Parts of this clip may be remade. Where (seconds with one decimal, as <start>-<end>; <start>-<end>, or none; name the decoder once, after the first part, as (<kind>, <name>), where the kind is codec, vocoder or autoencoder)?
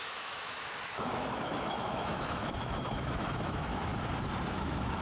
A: 0.0-3.9 (autoencoder, DAC-VAE); 4.5-5.0